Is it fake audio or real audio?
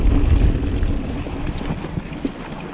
real